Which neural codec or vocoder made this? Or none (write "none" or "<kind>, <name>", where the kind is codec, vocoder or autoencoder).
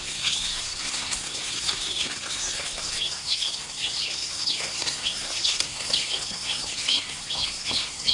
codec, SNAC